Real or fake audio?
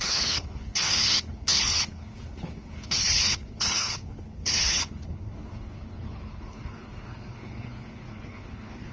fake